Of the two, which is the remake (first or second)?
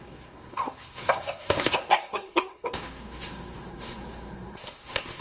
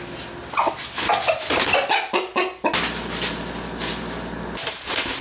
first